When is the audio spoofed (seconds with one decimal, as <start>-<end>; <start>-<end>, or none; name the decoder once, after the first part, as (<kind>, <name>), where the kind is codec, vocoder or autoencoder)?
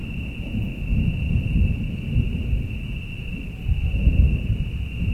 none